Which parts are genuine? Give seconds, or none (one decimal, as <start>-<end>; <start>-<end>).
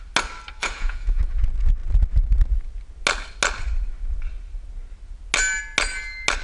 0.0-0.6; 1.2-6.4